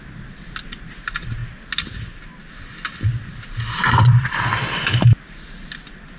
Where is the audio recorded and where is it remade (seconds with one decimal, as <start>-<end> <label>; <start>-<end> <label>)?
0.0-6.2 recorded